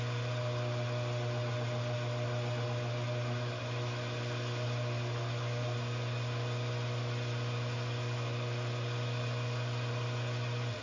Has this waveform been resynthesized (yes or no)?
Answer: no